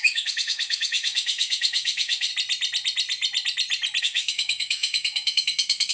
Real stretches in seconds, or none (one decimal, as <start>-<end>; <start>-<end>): 2.3-4.0